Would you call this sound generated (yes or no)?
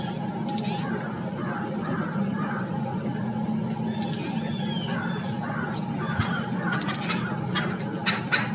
no